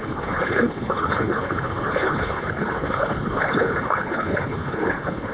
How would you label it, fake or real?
fake